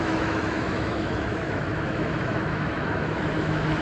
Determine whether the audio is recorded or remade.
remade